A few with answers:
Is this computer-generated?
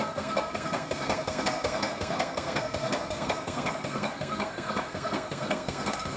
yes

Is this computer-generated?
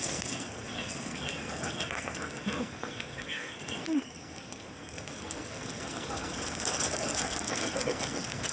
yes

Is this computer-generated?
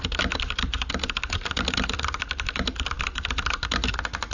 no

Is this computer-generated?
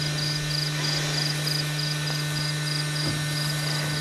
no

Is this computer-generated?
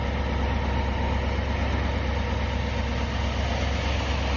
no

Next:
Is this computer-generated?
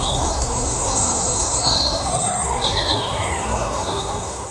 yes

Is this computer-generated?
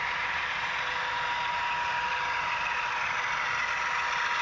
no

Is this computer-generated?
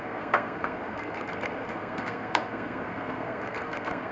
yes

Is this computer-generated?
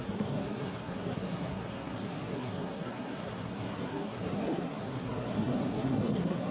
yes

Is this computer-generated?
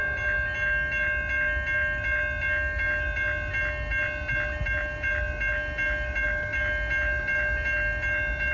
no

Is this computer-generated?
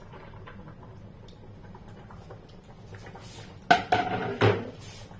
no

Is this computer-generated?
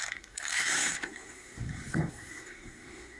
yes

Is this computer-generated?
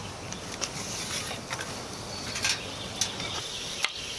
no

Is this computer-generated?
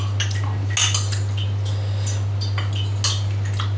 no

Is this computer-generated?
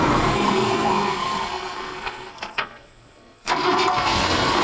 yes